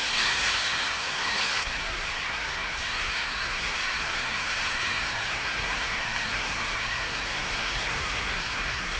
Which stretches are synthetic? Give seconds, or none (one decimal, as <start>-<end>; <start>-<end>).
0.0-9.0